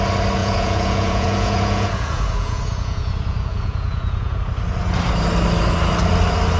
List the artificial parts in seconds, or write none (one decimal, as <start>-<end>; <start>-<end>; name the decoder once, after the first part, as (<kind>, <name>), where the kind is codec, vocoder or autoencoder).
0.4-4.4 (vocoder, Vocos)